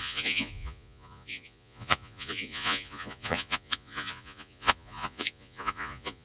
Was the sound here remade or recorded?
remade